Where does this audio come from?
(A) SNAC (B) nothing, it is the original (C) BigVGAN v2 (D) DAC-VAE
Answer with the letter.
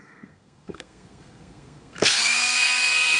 A